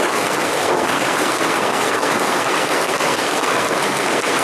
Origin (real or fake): fake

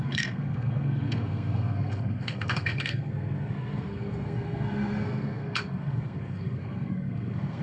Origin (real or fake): fake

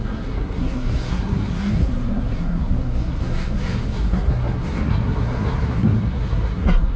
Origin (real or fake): fake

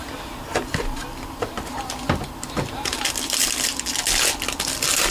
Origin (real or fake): real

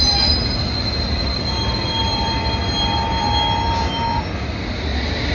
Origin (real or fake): real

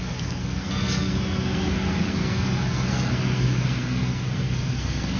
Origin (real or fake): fake